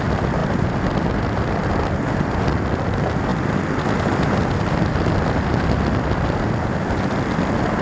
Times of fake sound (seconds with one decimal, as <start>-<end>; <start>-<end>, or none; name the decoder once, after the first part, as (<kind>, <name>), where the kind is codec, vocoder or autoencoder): 0.0-7.8 (vocoder, BigVGAN v2)